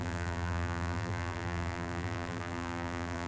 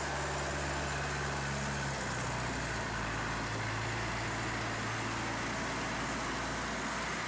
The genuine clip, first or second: second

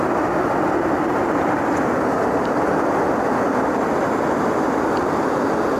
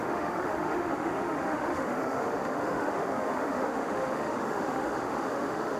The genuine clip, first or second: first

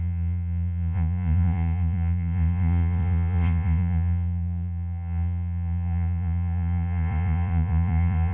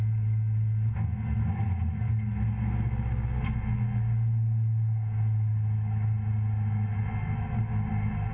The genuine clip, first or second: second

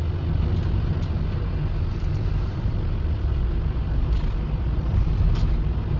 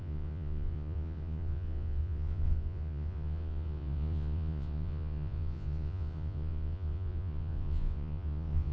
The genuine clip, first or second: first